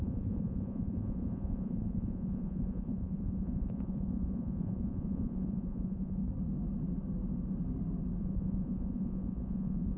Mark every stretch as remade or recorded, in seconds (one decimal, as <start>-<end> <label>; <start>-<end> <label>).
0.0-6.2 remade; 6.2-8.2 recorded; 8.2-10.0 remade